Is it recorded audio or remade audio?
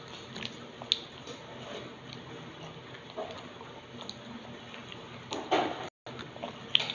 recorded